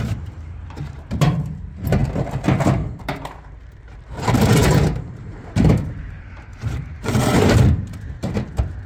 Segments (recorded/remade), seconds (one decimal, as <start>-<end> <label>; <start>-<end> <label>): 0.0-2.0 remade; 2.0-3.0 recorded; 3.0-8.9 remade